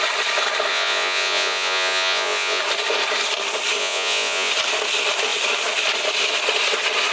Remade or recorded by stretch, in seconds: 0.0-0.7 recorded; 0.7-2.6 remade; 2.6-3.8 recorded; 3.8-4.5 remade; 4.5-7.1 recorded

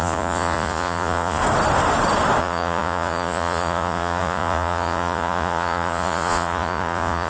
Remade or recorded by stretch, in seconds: 0.0-1.4 remade; 1.4-2.4 recorded; 2.4-7.3 remade

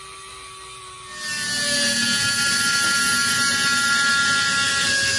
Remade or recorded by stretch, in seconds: 0.0-5.2 recorded

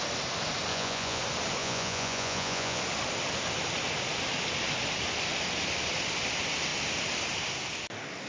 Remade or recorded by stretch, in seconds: 0.0-0.7 recorded; 0.7-1.2 remade; 1.2-1.6 recorded; 1.6-2.8 remade; 2.8-8.3 recorded

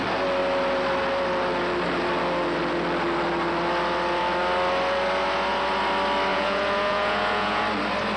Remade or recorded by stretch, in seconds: 0.0-6.3 recorded; 6.3-7.6 remade; 7.6-8.2 recorded